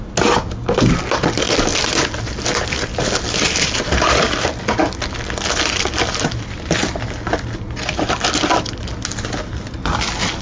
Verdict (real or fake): real